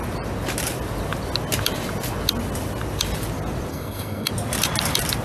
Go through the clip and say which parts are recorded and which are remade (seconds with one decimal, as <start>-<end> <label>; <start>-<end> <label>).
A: 0.0-3.7 recorded; 3.7-4.3 remade; 4.3-5.2 recorded